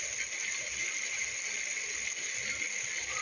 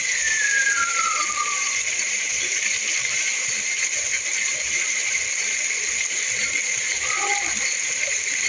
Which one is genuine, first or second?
first